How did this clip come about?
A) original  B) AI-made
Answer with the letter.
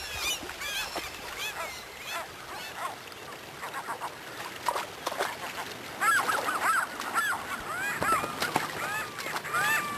A